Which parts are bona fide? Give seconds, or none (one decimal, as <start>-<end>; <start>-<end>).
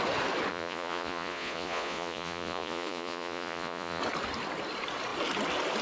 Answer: 0.0-0.5; 4.0-5.8